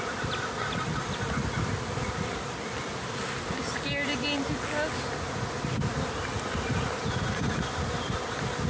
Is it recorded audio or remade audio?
recorded